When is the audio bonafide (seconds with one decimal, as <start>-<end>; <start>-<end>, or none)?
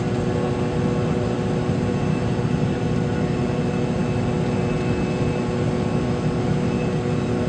0.0-7.5